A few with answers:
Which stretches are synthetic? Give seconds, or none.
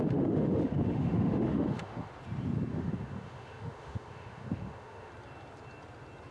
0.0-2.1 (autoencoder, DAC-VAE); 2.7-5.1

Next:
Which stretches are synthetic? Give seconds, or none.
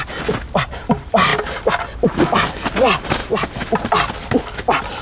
3.2-3.9 (vocoder, BigVGAN v2)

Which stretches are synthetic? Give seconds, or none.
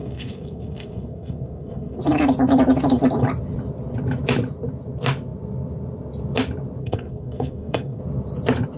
0.0-2.0 (codec, SNAC); 6.8-8.0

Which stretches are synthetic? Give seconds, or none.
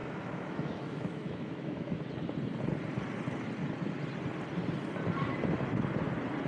0.0-2.0 (autoencoder, DAC-VAE)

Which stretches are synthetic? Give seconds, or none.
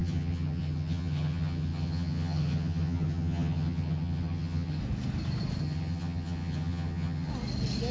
0.0-4.8 (vocoder, HiFi-GAN); 5.6-7.3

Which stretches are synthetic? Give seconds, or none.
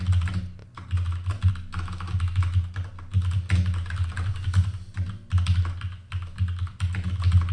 none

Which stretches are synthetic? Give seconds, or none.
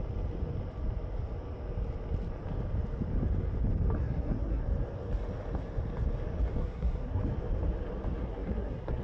4.0-4.6 (codec, SNAC); 6.6-7.2; 8.2-9.0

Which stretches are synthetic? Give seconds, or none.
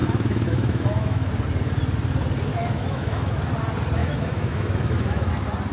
0.0-1.3 (autoencoder, DAC-VAE); 2.5-3.4; 4.0-5.3